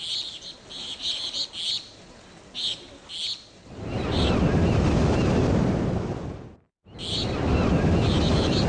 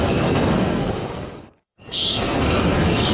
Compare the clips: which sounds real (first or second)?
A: first